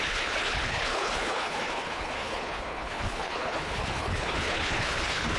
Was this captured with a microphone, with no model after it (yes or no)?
no